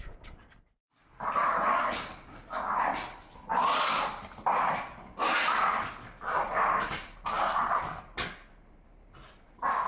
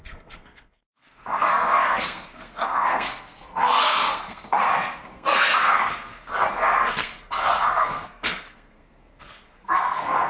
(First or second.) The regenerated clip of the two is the second